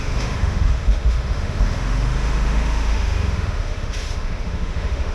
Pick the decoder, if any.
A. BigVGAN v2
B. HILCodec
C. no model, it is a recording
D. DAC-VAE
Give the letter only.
D